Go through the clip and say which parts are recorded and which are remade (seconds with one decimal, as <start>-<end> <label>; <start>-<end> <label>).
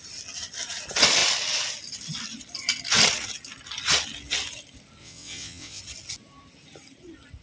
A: 0.0-5.0 recorded; 5.0-5.8 remade; 5.8-7.4 recorded